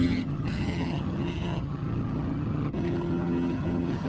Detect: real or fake fake